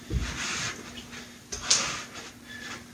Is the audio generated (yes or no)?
no